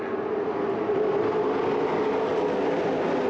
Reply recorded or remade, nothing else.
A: recorded